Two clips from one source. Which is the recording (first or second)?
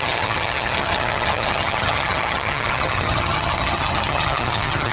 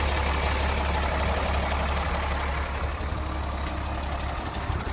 second